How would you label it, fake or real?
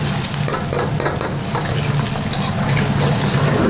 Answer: real